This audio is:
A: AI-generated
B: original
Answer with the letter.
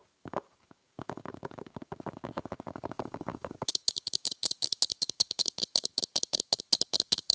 A